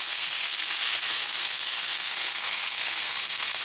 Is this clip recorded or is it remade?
remade